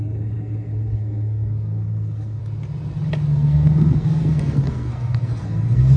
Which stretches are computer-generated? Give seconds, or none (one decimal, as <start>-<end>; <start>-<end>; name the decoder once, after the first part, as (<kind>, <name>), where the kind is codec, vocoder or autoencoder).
0.0-2.4 (codec, SNAC); 3.3-6.0